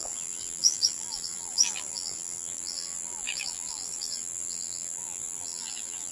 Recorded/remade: remade